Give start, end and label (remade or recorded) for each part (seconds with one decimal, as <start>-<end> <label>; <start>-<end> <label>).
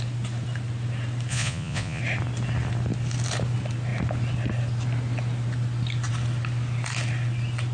0.0-1.3 recorded; 1.3-2.0 remade; 2.0-7.7 recorded